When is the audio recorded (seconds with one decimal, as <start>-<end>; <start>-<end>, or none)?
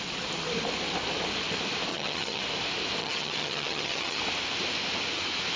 0.0-1.9; 2.4-3.0; 4.2-5.6